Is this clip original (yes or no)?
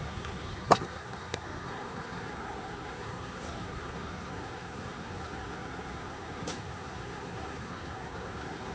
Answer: no